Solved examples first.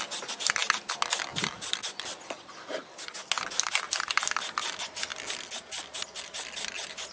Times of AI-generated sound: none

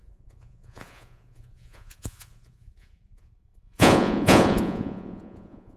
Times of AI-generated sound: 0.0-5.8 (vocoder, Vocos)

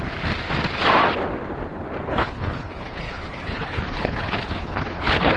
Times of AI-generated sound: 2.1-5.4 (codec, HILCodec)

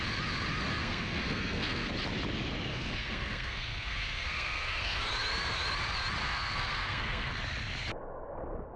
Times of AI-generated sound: 0.7-1.9 (codec, SNAC); 2.7-5.1; 6.2-7.3

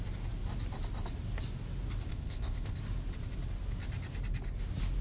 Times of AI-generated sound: 2.1-2.8 (codec, ZipCodec)

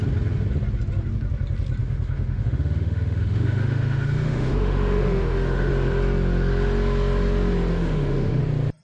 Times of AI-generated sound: 1.8-5.7 (autoencoder, DAC-VAE); 7.7-8.4

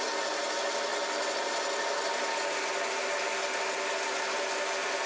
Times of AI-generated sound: none